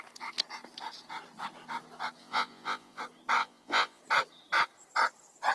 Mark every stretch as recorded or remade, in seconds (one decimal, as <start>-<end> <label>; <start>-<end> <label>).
0.0-2.2 recorded; 2.2-3.0 remade; 3.0-3.4 recorded; 3.4-4.0 remade; 4.0-5.5 recorded

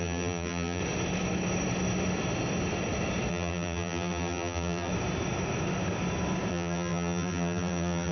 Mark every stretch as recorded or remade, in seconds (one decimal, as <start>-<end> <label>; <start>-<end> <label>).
0.0-0.8 remade; 0.8-3.3 recorded; 3.3-4.9 remade; 4.9-6.5 recorded; 6.5-8.1 remade

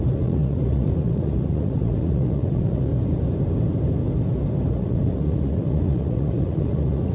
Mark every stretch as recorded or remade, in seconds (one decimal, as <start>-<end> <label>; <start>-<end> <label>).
0.0-2.9 remade; 2.9-4.7 recorded; 4.7-7.1 remade

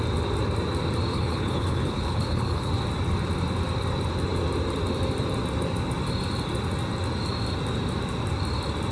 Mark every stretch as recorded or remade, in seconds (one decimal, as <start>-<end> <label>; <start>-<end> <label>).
0.0-1.1 recorded; 1.1-2.7 remade; 2.7-8.9 recorded

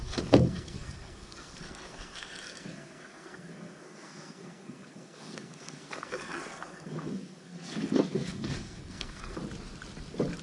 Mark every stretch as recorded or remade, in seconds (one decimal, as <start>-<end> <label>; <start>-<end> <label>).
0.0-9.4 remade; 9.4-10.4 recorded